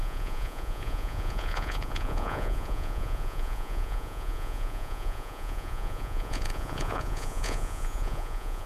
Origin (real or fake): fake